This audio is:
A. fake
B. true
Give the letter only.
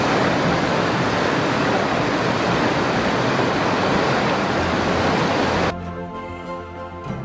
B